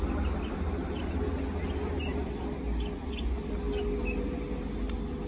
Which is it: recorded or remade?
recorded